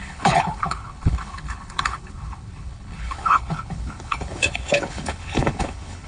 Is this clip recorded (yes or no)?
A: no